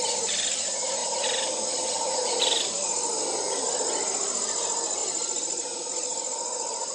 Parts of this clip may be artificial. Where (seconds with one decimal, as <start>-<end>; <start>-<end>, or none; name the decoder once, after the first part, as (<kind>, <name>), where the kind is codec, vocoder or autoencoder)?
0.0-5.0 (vocoder, BigVGAN v2); 5.9-6.9